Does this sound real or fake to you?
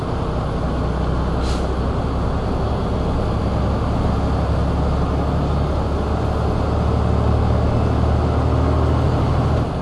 real